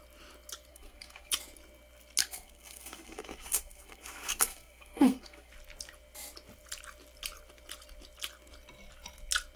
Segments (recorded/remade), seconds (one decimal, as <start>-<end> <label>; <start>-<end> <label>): 0.0-0.7 recorded; 0.7-1.3 remade; 1.3-2.2 recorded; 2.2-5.5 remade; 5.5-9.6 recorded